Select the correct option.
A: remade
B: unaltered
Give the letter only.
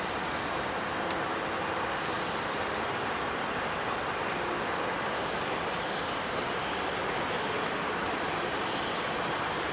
B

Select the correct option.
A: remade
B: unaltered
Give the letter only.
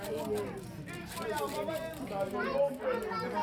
B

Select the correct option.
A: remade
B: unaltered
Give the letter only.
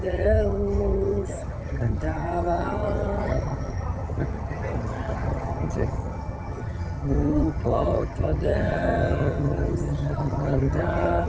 A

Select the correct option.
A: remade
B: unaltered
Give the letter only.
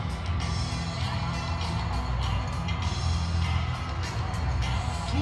B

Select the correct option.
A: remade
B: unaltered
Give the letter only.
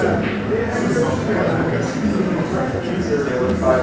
B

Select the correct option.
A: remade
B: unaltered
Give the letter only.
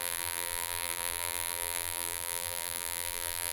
A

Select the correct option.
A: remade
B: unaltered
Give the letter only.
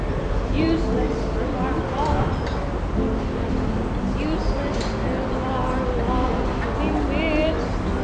B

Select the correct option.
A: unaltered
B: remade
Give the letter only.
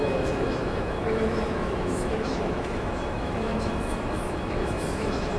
B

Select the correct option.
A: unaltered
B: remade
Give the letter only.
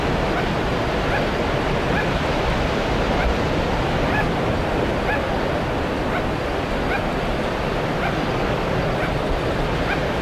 A